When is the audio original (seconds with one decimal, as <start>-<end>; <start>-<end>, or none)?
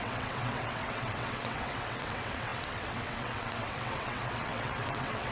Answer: none